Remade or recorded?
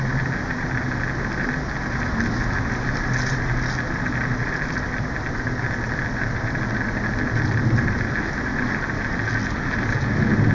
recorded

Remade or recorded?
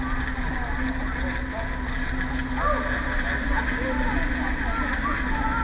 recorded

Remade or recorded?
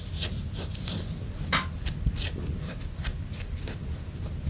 recorded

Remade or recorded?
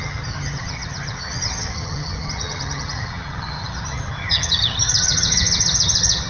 remade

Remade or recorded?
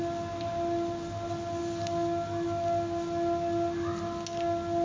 recorded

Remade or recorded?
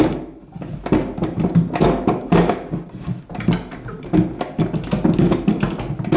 recorded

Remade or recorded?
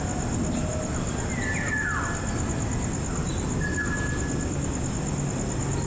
recorded